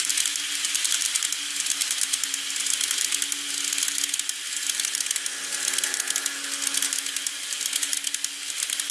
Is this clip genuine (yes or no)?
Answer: yes